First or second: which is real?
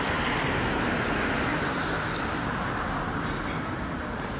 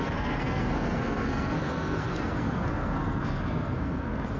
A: first